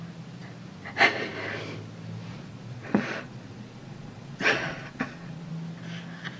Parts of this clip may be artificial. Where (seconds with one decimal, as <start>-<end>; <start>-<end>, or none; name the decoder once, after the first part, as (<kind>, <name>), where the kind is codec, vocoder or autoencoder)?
2.3-5.5 (vocoder, Vocos)